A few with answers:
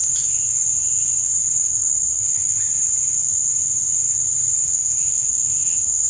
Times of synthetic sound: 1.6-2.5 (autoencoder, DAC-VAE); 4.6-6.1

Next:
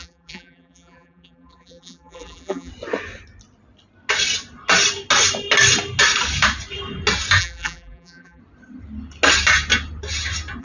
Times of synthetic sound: 0.0-2.7 (vocoder, BigVGAN v2); 7.4-8.4

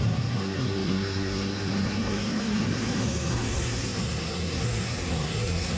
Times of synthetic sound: 0.0-5.8 (codec, SNAC)

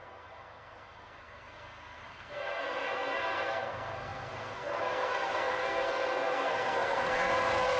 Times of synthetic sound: 0.0-7.8 (codec, SNAC)

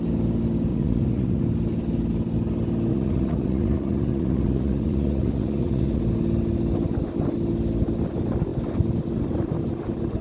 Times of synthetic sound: 0.7-1.4 (vocoder, Vocos); 2.9-6.0

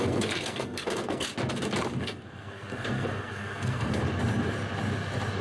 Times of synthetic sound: 0.0-1.3 (codec, SNAC); 2.0-4.0

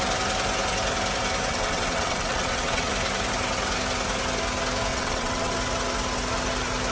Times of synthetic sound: 1.5-2.9 (vocoder, WaveNeXt); 4.9-5.5

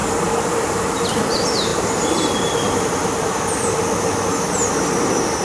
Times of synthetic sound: none